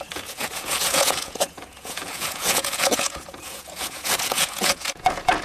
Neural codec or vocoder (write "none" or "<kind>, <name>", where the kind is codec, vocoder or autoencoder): vocoder, Vocos